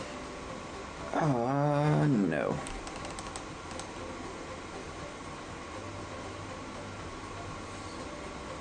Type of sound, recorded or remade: recorded